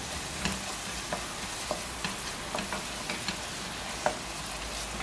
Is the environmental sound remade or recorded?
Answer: recorded